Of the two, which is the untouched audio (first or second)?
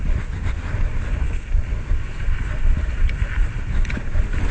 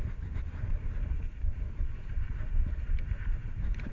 first